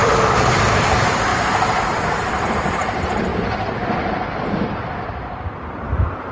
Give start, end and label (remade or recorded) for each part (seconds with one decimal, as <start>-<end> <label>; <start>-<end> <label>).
0.0-1.3 remade; 1.3-1.8 recorded; 1.8-3.3 remade; 3.3-4.7 recorded; 4.7-6.3 remade